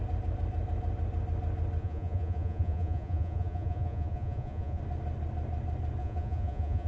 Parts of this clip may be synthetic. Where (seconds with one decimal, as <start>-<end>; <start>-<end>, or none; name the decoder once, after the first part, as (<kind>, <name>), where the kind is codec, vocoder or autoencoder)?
1.8-4.8 (vocoder, Vocos); 6.0-6.9